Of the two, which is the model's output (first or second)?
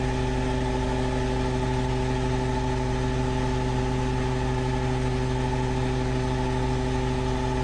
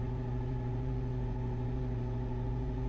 second